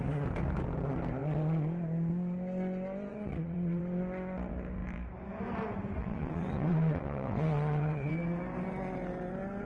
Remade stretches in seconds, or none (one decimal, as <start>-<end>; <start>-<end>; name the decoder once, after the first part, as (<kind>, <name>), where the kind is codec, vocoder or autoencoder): 3.1-3.8 (vocoder, WaveNeXt); 6.0-8.1